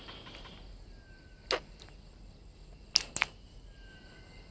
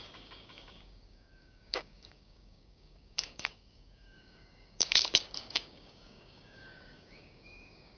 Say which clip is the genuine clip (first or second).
first